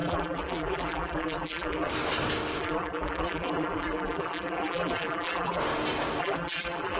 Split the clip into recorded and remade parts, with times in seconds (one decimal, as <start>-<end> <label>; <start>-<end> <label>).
0.0-1.9 remade; 1.9-2.6 recorded; 2.6-5.6 remade; 5.6-6.2 recorded; 6.2-7.0 remade